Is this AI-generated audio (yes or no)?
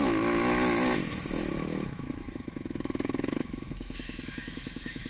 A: yes